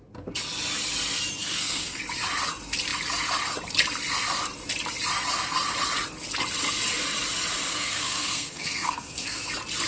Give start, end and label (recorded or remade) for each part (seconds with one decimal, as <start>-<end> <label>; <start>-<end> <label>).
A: 0.0-1.4 recorded; 1.4-2.0 remade; 2.0-7.7 recorded; 7.7-9.5 remade; 9.5-9.9 recorded